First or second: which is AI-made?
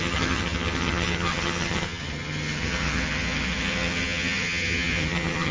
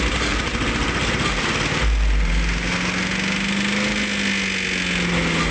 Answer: first